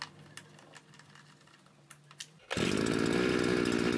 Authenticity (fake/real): real